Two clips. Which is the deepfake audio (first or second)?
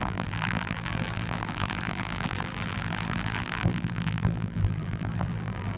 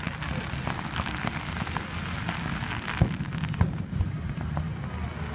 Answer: first